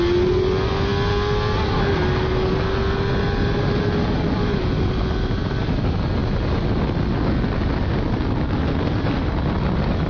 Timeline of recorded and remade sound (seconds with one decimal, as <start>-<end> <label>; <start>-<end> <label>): 0.0-10.1 recorded